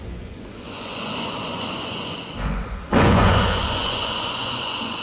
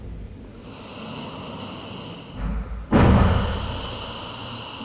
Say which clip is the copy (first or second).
first